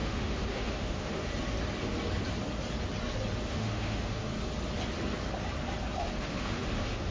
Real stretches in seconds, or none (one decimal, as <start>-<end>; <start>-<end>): 1.3-3.5; 4.3-6.2